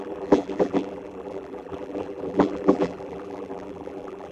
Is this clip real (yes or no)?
no